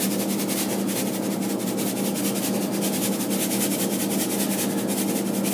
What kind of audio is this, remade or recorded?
recorded